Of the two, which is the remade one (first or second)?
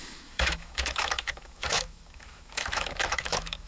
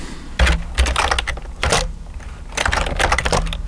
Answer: first